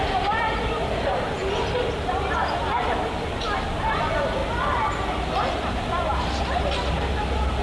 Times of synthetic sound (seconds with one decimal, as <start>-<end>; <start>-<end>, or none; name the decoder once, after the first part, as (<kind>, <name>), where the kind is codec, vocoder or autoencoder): none